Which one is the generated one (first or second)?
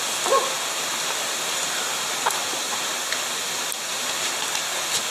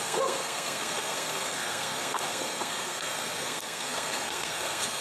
second